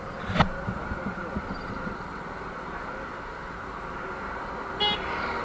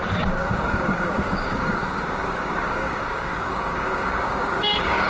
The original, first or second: first